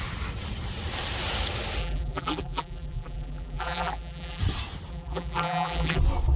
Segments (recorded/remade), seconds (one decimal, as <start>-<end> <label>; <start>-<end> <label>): 0.0-1.8 recorded; 1.8-4.4 remade; 4.4-4.9 recorded; 4.9-6.0 remade; 6.0-6.4 recorded